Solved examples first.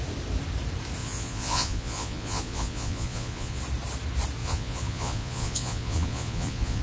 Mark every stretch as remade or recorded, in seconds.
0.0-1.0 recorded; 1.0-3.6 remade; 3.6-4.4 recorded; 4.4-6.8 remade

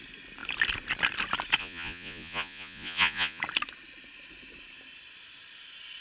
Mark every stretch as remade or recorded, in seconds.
0.0-1.6 recorded; 1.6-3.4 remade; 3.4-6.0 recorded

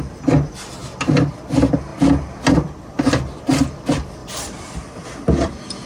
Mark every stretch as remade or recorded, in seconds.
0.0-5.9 recorded

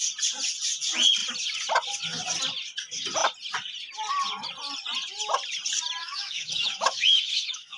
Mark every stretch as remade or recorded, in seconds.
0.0-6.0 recorded; 6.0-7.8 remade